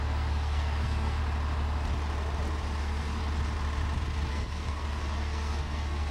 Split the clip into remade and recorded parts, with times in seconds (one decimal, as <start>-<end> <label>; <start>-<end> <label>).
0.0-1.2 remade; 1.2-2.8 recorded; 2.8-3.2 remade; 3.2-4.3 recorded; 4.3-6.1 remade